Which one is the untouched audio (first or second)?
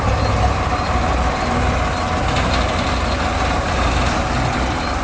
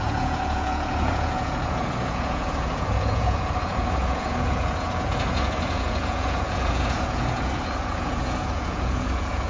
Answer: first